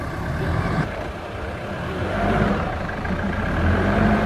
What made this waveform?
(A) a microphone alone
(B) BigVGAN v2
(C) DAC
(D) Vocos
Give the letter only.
B